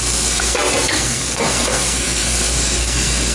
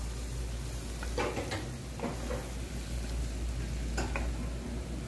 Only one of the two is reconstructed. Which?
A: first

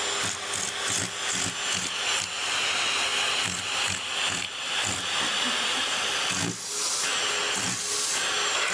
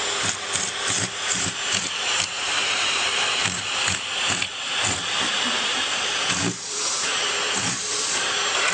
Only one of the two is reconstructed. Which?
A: second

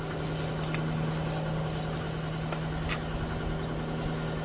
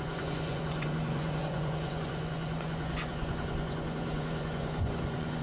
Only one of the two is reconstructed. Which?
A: second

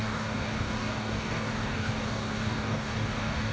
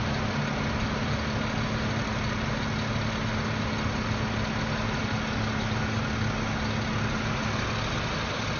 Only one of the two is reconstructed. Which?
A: first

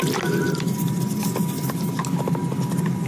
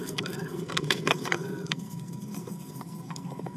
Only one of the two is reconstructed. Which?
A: second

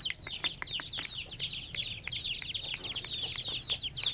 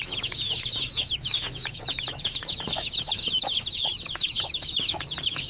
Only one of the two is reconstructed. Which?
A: second